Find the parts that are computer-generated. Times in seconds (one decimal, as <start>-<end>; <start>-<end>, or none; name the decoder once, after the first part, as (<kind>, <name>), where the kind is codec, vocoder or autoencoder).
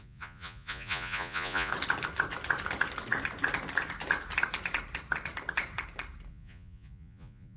0.0-1.7 (vocoder, Vocos); 6.3-7.6